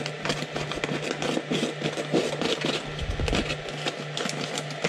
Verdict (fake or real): real